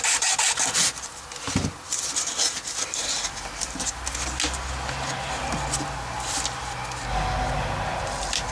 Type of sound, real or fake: real